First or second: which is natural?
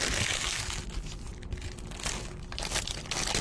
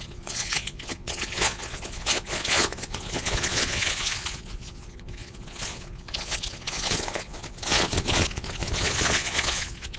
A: first